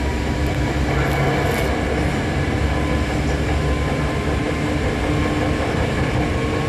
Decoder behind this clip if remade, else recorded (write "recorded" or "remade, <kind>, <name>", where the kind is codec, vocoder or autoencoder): recorded